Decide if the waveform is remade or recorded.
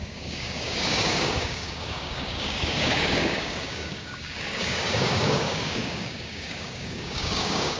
remade